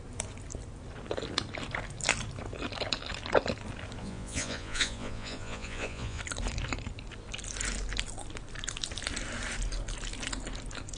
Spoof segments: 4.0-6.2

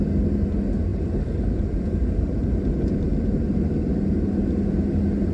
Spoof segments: 0.9-2.2

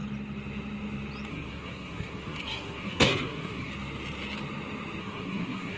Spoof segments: 1.3-3.7; 5.0-5.8

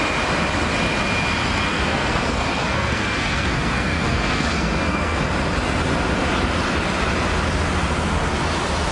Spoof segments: 1.7-5.2

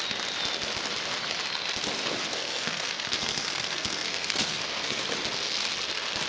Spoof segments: 2.3-5.0